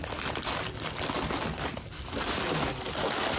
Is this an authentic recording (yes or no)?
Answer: yes